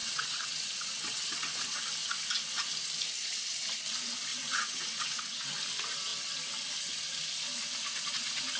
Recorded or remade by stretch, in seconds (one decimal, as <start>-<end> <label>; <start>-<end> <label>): 0.0-1.8 remade; 1.8-4.3 recorded; 4.3-5.5 remade; 5.5-8.6 recorded